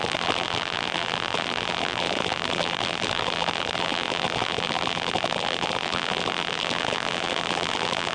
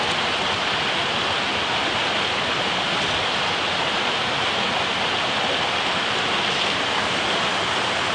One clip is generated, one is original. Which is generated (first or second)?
first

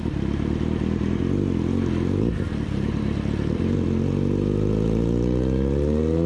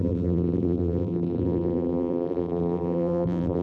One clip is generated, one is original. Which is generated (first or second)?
second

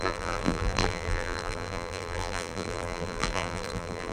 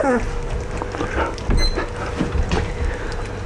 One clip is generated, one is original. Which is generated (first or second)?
first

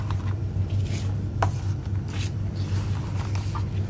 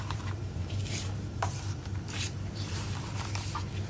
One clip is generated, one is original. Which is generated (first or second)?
second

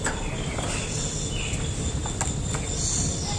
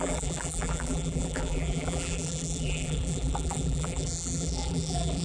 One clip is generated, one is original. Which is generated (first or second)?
second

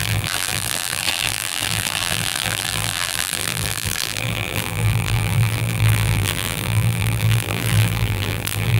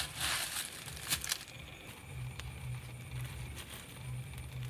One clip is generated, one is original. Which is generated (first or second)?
first